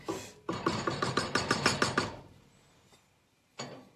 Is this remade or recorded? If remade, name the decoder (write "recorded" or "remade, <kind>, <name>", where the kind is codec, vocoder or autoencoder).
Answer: recorded